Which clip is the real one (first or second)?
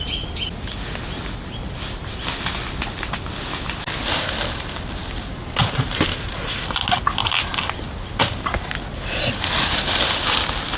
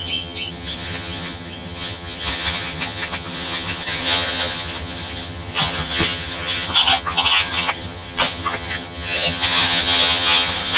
first